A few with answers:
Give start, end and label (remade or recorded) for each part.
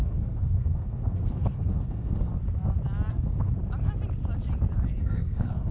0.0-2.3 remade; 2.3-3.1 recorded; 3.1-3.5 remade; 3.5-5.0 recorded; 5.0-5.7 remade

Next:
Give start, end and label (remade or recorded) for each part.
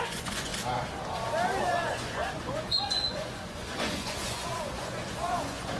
0.0-0.5 remade; 0.5-1.6 recorded; 1.6-5.8 remade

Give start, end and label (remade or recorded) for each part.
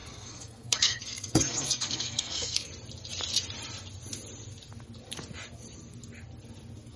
0.0-2.7 remade; 2.7-7.0 recorded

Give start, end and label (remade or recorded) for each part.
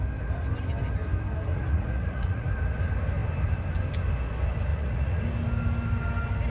0.0-1.5 recorded; 1.5-2.5 remade; 2.5-4.7 recorded; 4.7-5.2 remade; 5.2-6.5 recorded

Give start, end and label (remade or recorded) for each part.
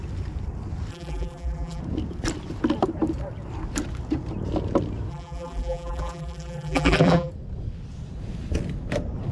0.0-0.9 recorded; 0.9-1.8 remade; 1.8-5.1 recorded; 5.1-7.3 remade; 7.3-9.3 recorded